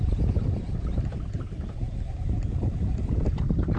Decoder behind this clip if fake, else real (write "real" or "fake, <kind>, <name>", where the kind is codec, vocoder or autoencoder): real